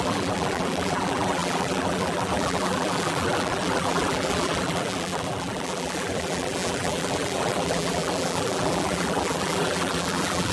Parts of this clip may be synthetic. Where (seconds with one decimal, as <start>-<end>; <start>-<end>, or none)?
0.0-10.5